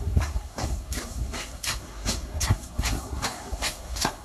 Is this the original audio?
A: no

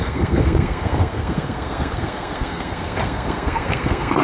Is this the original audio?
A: no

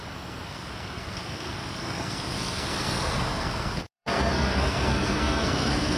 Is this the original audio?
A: no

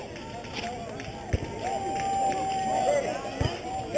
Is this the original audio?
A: yes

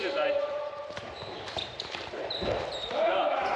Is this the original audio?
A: no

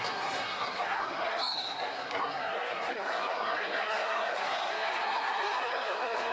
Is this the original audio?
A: no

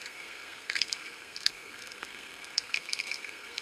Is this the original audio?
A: no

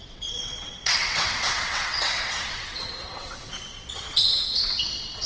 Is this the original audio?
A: no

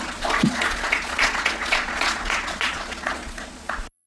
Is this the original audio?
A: no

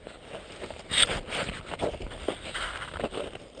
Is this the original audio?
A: yes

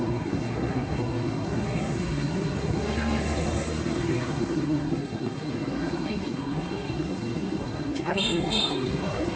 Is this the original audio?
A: no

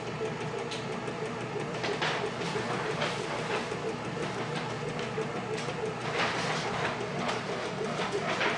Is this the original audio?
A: yes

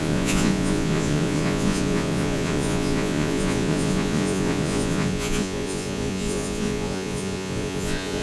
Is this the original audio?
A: no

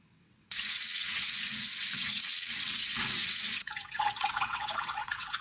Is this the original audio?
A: no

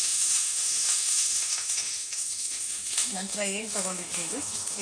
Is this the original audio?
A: no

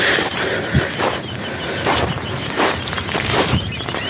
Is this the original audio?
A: no